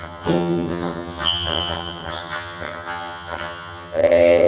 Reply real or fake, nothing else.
fake